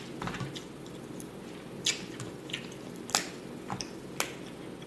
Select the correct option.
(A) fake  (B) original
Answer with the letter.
B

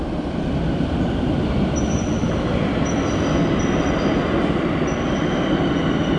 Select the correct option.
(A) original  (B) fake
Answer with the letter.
A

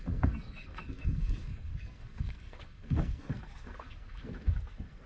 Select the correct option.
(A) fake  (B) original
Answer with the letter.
A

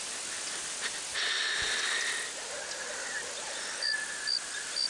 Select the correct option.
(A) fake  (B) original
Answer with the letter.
B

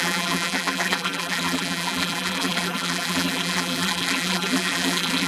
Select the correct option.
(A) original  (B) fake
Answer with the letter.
B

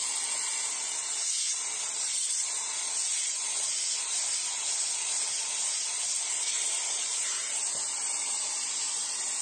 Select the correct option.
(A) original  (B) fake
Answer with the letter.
A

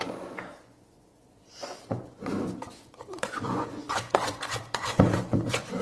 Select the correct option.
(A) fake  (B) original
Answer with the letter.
A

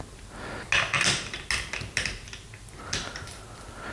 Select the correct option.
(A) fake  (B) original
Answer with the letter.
B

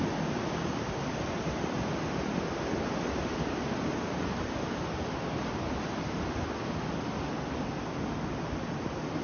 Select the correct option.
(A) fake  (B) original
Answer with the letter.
B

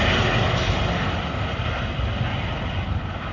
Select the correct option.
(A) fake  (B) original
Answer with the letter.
B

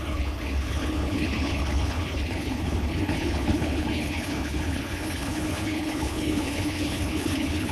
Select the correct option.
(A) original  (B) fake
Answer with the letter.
B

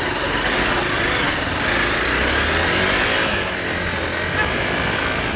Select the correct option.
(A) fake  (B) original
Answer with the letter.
B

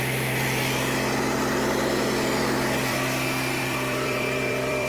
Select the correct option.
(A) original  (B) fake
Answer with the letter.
B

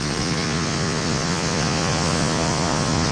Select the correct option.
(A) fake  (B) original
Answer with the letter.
A